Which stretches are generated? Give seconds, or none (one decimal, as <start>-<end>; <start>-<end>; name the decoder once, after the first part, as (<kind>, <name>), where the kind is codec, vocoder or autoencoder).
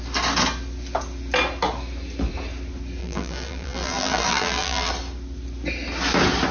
3.0-4.9 (vocoder, BigVGAN v2)